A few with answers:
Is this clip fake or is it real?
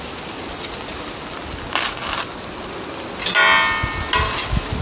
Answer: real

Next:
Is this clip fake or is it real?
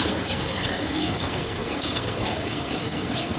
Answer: fake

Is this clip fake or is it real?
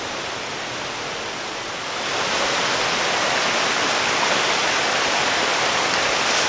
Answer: real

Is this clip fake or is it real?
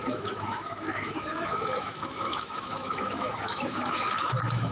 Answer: fake